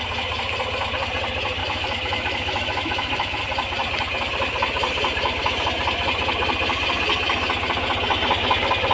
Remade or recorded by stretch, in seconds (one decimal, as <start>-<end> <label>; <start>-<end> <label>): 0.0-1.6 recorded; 1.6-3.4 remade; 3.4-8.9 recorded